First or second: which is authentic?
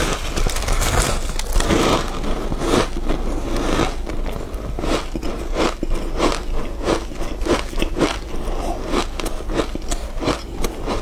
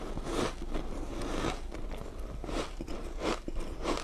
first